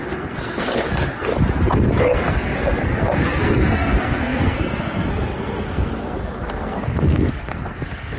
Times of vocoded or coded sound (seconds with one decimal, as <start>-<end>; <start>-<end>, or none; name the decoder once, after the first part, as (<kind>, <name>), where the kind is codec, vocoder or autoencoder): 0.0-1.3 (codec, SNAC); 2.0-8.2